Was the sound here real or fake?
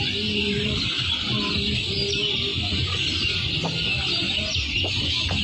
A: real